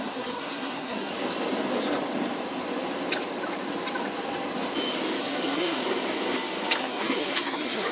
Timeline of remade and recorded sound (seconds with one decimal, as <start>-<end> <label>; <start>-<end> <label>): 0.0-1.1 remade; 1.1-5.2 recorded; 5.2-5.8 remade; 5.8-6.8 recorded; 6.8-7.9 remade